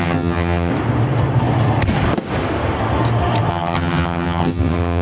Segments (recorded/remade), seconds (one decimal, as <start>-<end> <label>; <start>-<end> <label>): 0.0-0.7 remade; 0.7-3.5 recorded; 3.5-5.0 remade